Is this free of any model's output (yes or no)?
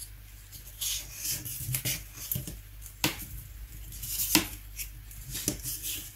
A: yes